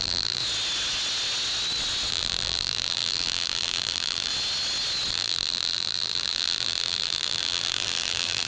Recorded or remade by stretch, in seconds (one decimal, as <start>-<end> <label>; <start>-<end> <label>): 0.0-0.4 remade; 0.4-2.1 recorded; 2.1-4.3 remade; 4.3-5.1 recorded; 5.1-8.5 remade